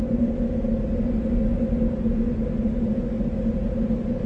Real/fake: real